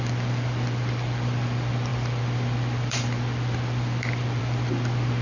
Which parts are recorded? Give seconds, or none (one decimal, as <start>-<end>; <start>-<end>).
none